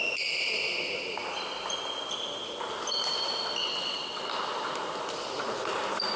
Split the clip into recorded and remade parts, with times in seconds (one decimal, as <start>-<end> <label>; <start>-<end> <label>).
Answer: 0.0-3.6 recorded; 3.6-4.2 remade; 4.2-6.2 recorded